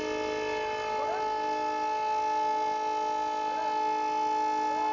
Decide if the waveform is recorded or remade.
recorded